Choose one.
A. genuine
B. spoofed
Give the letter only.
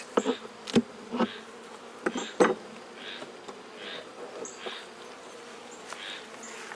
A